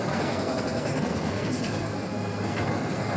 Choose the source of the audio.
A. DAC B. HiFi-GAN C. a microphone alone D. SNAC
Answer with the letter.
D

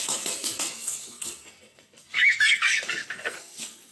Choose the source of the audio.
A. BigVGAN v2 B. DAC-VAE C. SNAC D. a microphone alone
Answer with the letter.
C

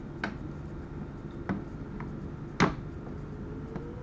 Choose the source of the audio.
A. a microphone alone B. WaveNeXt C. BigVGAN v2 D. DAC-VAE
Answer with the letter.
A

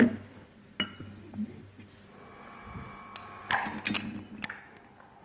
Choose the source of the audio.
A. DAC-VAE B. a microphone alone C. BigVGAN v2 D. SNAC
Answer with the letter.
B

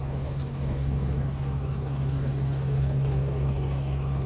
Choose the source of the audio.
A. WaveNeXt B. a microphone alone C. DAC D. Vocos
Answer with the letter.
C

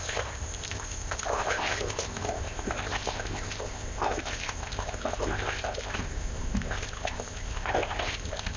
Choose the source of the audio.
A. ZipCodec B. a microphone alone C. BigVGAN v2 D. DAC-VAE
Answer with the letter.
A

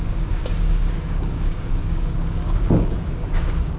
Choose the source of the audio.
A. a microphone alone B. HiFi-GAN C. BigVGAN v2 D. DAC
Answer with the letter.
D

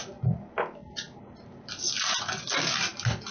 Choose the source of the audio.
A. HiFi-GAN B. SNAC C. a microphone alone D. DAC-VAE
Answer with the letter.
C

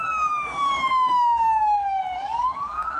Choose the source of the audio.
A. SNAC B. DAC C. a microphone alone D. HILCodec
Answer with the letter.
B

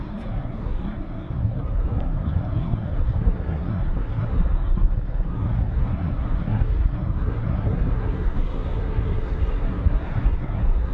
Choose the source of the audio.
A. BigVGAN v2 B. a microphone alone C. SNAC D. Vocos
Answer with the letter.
C